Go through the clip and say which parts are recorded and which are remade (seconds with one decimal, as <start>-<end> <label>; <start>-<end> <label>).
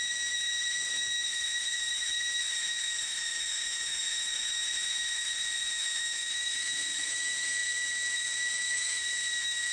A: 0.0-9.7 remade